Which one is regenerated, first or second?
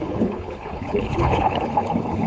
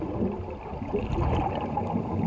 first